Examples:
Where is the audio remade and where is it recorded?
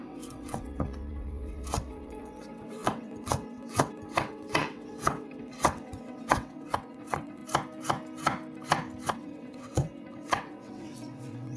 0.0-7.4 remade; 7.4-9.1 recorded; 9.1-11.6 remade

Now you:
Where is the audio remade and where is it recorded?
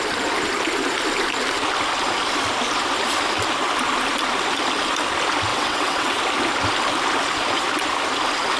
0.0-5.5 recorded; 5.5-6.2 remade; 6.2-8.6 recorded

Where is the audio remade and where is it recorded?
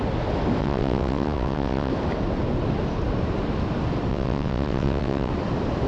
0.0-0.6 recorded; 0.6-1.9 remade; 1.9-4.1 recorded; 4.1-5.3 remade; 5.3-5.9 recorded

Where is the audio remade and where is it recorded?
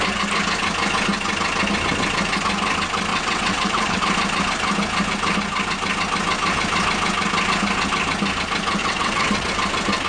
0.0-3.1 recorded; 3.1-4.0 remade; 4.0-8.8 recorded; 8.8-9.5 remade; 9.5-10.1 recorded